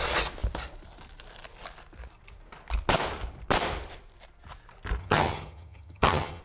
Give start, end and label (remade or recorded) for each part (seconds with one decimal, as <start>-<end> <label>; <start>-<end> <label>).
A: 0.0-5.0 recorded; 5.0-6.4 remade

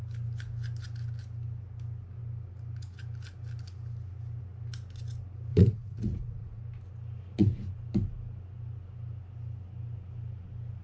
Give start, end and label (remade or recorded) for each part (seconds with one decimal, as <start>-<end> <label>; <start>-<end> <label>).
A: 0.0-5.5 recorded; 5.5-6.6 remade; 6.6-10.8 recorded

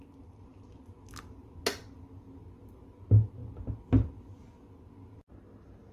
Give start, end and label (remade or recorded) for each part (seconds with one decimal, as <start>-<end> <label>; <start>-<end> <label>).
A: 0.0-5.9 recorded

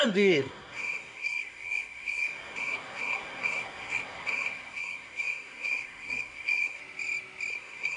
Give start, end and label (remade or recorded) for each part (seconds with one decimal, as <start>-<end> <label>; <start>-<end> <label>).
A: 0.0-6.8 remade; 6.8-7.5 recorded; 7.5-8.0 remade

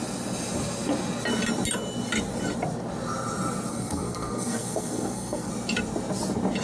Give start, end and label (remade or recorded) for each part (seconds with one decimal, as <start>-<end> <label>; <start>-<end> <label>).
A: 0.0-3.7 recorded; 3.7-5.5 remade; 5.5-6.6 recorded

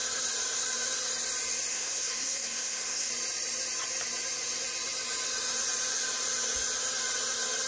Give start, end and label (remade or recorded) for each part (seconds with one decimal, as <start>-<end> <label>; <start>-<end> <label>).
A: 0.0-1.7 recorded; 1.7-3.1 remade; 3.1-7.7 recorded